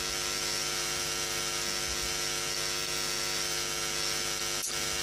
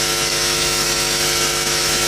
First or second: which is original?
first